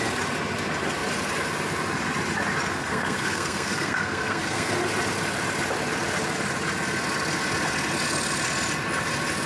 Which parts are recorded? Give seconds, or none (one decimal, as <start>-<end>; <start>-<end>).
0.0-2.7; 4.7-9.5